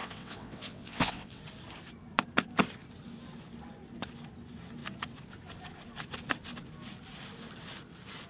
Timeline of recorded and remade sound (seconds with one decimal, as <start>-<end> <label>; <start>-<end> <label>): 0.0-1.4 remade; 1.4-8.3 recorded